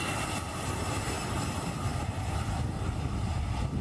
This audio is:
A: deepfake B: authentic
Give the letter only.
B